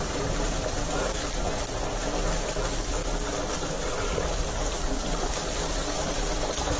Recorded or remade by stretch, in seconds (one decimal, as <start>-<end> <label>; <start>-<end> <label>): 0.0-6.8 recorded